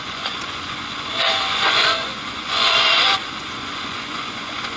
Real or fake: fake